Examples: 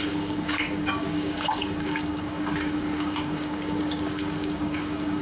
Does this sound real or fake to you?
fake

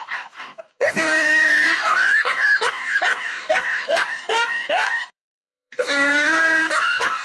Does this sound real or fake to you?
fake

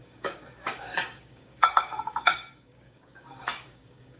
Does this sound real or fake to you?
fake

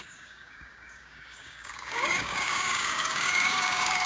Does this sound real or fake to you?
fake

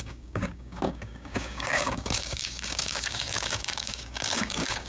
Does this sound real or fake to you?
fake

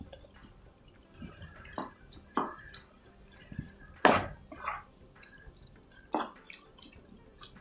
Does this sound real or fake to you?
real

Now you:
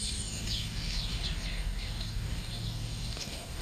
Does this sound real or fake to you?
fake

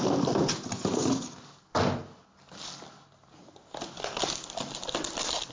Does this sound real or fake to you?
real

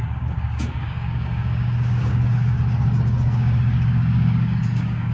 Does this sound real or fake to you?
fake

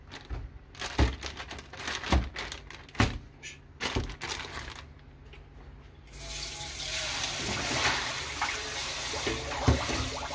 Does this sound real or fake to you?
real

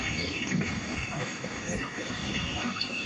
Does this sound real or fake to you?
fake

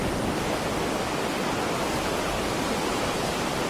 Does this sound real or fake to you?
real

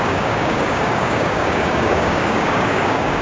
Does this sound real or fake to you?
fake